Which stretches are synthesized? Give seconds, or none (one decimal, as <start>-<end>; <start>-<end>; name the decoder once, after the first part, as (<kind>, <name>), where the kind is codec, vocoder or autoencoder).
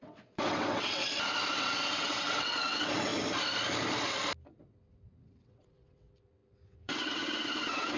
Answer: 0.0-1.0 (vocoder, WaveNeXt); 1.5-3.1; 4.6-8.0